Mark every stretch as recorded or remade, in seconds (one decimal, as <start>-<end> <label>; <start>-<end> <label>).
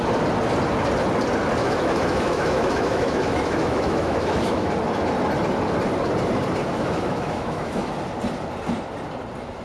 0.0-1.6 recorded; 1.6-4.7 remade; 4.7-6.7 recorded; 6.7-7.9 remade; 7.9-9.6 recorded